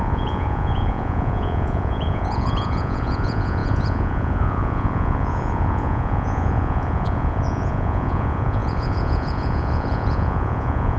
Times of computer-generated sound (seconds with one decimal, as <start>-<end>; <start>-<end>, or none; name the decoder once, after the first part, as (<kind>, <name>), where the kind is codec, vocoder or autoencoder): 0.0-11.0 (vocoder, Vocos)